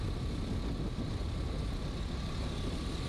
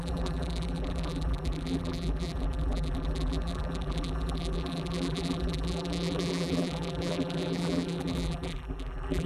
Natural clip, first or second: first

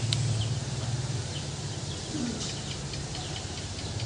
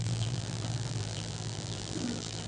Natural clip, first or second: first